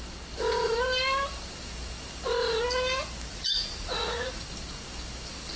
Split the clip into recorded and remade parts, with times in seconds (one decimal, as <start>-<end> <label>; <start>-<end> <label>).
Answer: 0.0-3.3 recorded; 3.3-4.4 remade; 4.4-5.6 recorded